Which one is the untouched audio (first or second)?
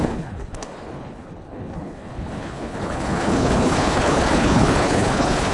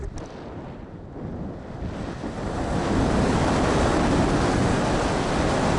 second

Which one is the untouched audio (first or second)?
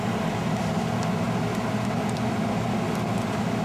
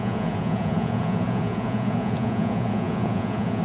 first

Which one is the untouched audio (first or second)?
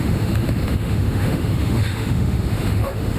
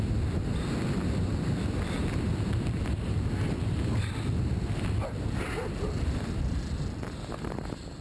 second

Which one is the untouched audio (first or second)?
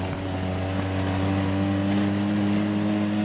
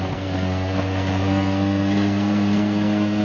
first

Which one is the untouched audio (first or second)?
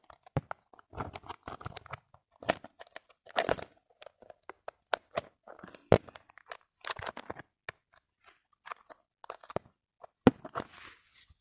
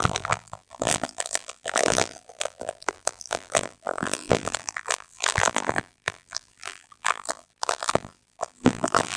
first